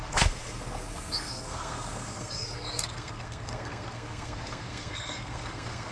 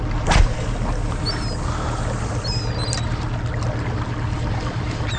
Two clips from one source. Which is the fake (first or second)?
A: first